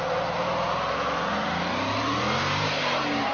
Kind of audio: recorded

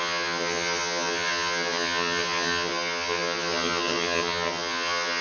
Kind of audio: remade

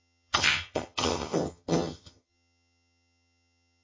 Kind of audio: remade